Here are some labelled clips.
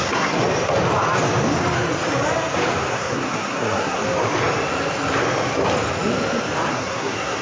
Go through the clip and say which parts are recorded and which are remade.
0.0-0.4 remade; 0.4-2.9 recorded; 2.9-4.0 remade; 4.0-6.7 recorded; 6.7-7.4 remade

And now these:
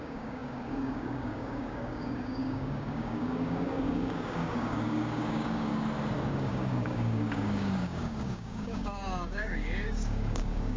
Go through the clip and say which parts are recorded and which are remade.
0.0-5.7 remade; 5.7-6.3 recorded; 6.3-10.8 remade

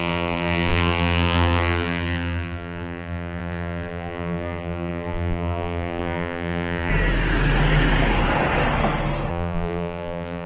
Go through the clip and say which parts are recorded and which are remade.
0.0-6.9 remade; 6.9-9.3 recorded; 9.3-10.5 remade

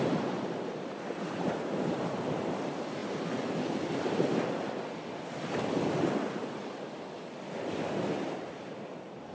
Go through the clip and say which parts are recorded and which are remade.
0.0-3.0 remade; 3.0-8.0 recorded; 8.0-9.3 remade

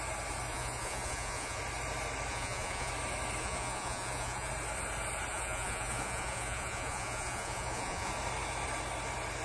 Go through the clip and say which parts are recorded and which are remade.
0.0-0.5 recorded; 0.5-1.6 remade; 1.6-2.3 recorded; 2.3-2.9 remade; 2.9-3.4 recorded; 3.4-4.5 remade; 4.5-5.3 recorded; 5.3-8.1 remade; 8.1-9.4 recorded

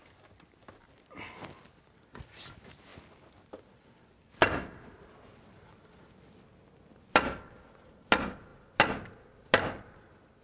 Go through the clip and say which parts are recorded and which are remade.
0.0-10.4 recorded

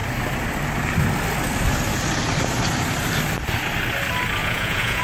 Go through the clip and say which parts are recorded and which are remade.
0.0-4.4 recorded; 4.4-5.0 remade

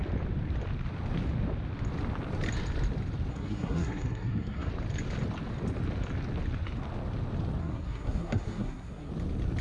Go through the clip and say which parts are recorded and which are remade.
0.0-3.3 recorded; 3.3-4.7 remade; 4.7-7.6 recorded; 7.6-9.1 remade; 9.1-9.6 recorded